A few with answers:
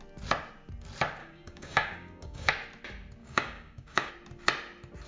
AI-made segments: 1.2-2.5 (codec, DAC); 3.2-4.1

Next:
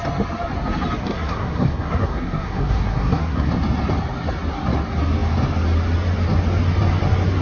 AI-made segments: 1.0-3.5 (codec, SNAC)

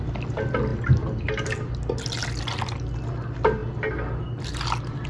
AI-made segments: none

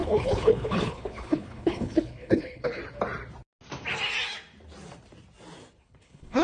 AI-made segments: 0.0-2.8 (codec, HILCodec); 5.8-6.4